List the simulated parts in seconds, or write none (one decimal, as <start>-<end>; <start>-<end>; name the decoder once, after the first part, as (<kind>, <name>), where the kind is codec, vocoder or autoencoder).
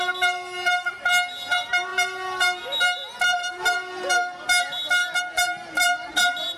none